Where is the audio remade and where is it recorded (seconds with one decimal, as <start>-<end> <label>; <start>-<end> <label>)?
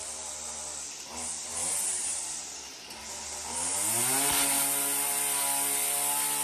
0.0-1.5 recorded; 1.5-2.2 remade; 2.2-3.0 recorded; 3.0-3.7 remade; 3.7-6.4 recorded